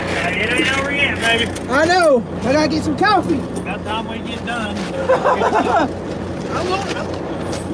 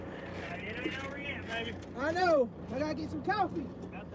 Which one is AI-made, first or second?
second